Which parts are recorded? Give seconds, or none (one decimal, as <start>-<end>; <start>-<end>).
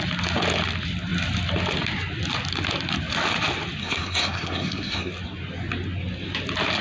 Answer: 0.0-3.8; 5.1-6.8